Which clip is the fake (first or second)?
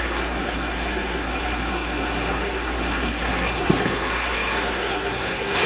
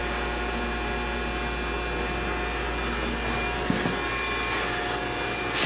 first